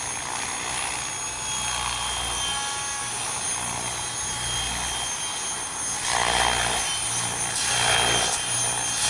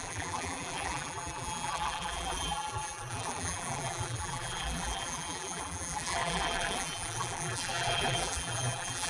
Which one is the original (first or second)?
first